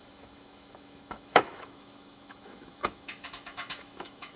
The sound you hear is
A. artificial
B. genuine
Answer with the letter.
A